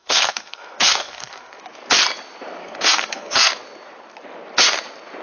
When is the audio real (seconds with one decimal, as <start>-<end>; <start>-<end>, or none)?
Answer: 1.6-2.6; 3.5-5.2